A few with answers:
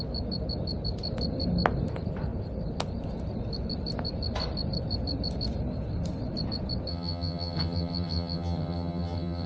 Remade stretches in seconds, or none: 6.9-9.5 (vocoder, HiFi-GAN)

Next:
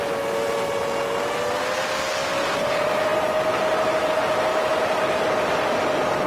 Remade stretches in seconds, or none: 4.5-5.0 (autoencoder, DAC-VAE)

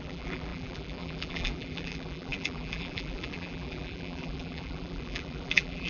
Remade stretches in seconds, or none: 0.0-5.9 (vocoder, BigVGAN v2)

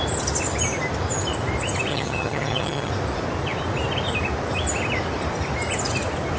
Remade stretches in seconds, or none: 1.9-2.9 (vocoder, HiFi-GAN)

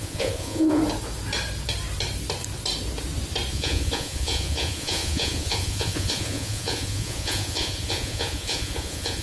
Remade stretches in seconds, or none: 0.0-0.8 (vocoder, Vocos); 3.5-9.2

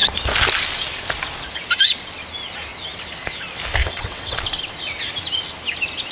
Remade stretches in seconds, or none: 3.8-4.4 (vocoder, WaveNeXt)

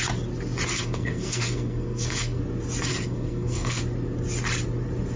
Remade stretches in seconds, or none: 0.7-2.4 (codec, SNAC); 2.9-3.8

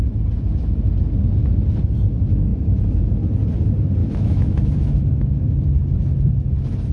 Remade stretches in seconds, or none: 4.0-5.0 (autoencoder, DAC-VAE)